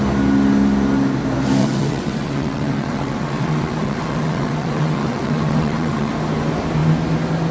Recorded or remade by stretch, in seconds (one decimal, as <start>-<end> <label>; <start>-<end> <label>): 0.0-1.6 recorded; 1.6-6.1 remade; 6.1-7.5 recorded